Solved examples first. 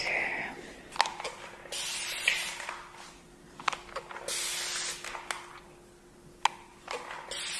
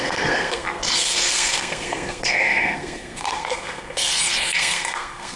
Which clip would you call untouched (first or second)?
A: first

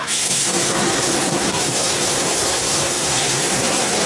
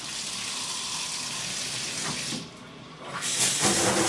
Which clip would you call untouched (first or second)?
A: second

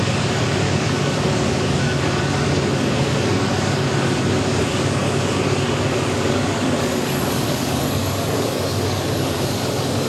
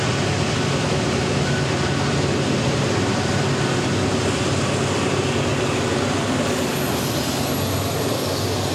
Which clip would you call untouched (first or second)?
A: second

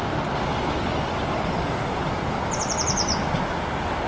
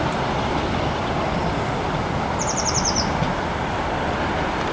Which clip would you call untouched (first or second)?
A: first